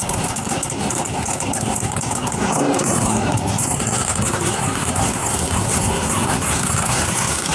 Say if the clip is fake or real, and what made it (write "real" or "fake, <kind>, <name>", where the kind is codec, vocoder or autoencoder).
fake, codec, SNAC